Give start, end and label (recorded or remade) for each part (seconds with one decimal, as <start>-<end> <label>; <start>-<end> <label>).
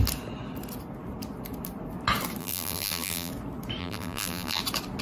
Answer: 0.0-2.4 recorded; 2.4-3.3 remade; 3.3-3.8 recorded; 3.8-4.6 remade; 4.6-5.0 recorded